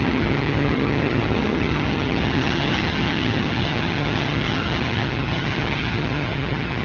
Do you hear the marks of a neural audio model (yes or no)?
yes